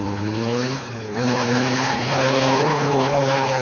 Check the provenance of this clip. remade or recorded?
remade